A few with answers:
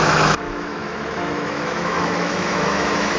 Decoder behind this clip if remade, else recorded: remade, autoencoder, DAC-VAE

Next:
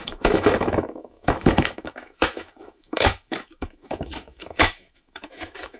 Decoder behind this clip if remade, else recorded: remade, autoencoder, DAC-VAE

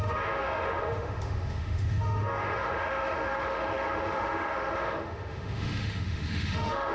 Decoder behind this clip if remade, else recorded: remade, autoencoder, DAC-VAE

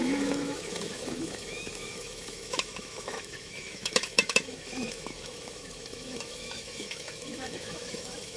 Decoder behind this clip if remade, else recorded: remade, autoencoder, DAC-VAE